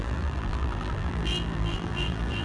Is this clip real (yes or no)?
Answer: no